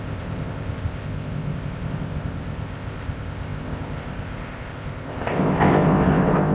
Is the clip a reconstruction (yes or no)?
yes